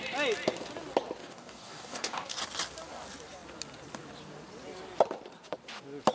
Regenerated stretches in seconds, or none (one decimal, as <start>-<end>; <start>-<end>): 1.2-2.4